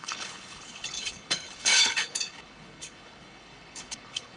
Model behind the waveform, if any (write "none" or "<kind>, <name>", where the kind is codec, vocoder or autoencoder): codec, HILCodec